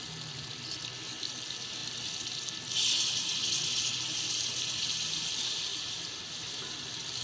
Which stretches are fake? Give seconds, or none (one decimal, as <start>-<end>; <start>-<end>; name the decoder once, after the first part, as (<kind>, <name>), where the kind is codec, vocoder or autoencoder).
5.7-6.5 (vocoder, BigVGAN v2)